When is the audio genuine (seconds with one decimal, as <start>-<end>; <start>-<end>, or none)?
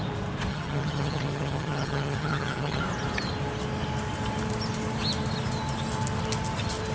0.0-0.5; 2.8-6.9